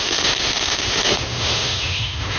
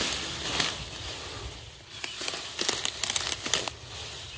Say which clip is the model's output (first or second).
first